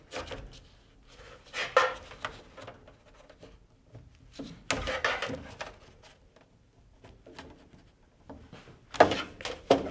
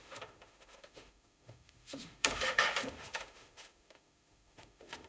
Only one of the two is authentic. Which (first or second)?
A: first